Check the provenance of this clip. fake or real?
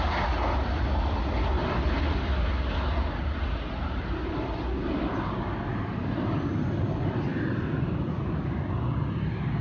real